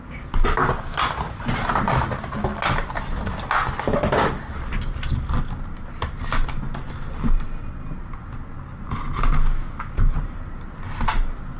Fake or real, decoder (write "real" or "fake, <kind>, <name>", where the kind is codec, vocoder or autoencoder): real